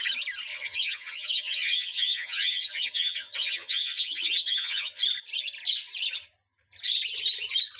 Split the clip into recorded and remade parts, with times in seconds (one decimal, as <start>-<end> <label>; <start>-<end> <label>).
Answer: 0.0-0.5 recorded; 0.5-5.0 remade; 5.0-7.8 recorded